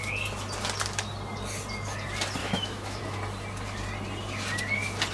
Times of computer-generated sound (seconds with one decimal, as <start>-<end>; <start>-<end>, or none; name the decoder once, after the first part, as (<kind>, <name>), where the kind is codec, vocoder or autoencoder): 2.4-3.0 (autoencoder, DAC-VAE)